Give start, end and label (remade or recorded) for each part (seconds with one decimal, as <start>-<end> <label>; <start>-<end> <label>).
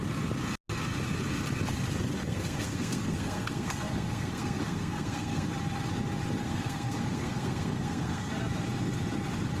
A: 0.0-2.2 recorded; 2.2-5.5 remade; 5.5-6.4 recorded; 6.4-8.3 remade; 8.3-9.6 recorded